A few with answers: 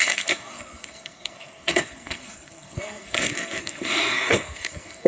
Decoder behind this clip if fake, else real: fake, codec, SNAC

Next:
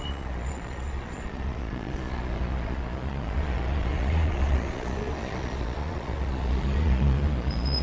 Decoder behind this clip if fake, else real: fake, vocoder, Vocos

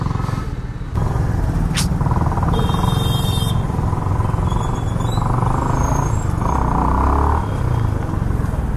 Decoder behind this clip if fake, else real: real